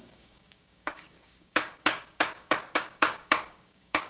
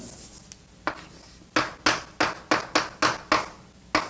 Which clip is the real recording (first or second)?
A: second